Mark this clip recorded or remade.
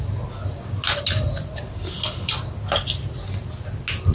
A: recorded